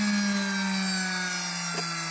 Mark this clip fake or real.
real